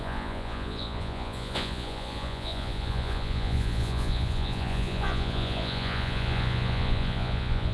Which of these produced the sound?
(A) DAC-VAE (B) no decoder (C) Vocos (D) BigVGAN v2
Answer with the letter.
C